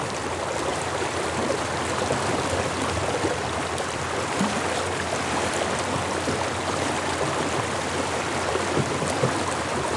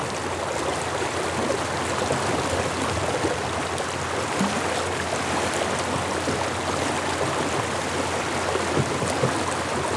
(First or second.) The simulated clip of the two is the first